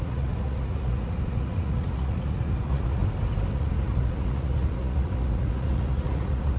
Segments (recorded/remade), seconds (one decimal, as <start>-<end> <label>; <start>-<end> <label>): 0.0-3.0 remade; 3.0-3.5 recorded; 3.5-6.6 remade